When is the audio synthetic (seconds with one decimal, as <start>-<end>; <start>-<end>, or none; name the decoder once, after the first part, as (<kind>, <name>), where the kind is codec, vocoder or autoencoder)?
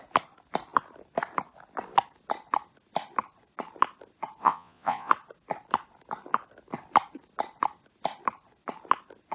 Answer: 4.4-5.1 (vocoder, Vocos)